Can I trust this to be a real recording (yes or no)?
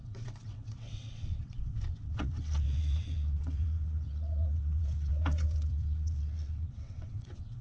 no